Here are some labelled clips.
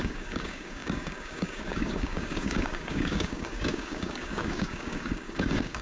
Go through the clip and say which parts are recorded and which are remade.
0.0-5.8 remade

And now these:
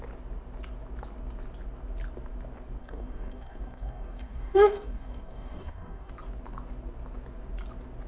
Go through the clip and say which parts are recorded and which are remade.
0.0-2.8 recorded; 2.8-6.1 remade; 6.1-8.1 recorded

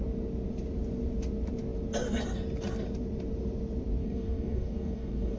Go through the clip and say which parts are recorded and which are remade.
0.0-4.0 recorded; 4.0-5.4 remade

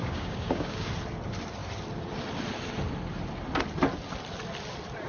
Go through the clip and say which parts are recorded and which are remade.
0.0-0.9 remade; 0.9-5.1 recorded

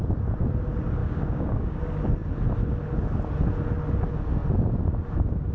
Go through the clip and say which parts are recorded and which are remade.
0.0-1.0 recorded; 1.0-1.8 remade; 1.8-5.5 recorded

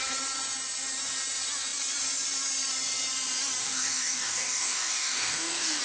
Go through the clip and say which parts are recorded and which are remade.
0.0-3.6 recorded; 3.6-5.8 remade

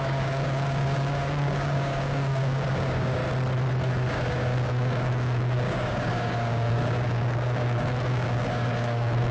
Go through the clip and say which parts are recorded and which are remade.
0.0-3.2 remade; 3.2-3.9 recorded; 3.9-9.3 remade